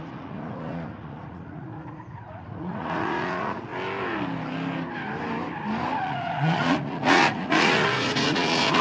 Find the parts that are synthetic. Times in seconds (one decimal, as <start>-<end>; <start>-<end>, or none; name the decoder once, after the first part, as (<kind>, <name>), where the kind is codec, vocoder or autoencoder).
0.0-3.7 (vocoder, Vocos); 5.9-8.8